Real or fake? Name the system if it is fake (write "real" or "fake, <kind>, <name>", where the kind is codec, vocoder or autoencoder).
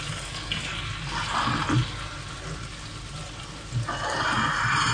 real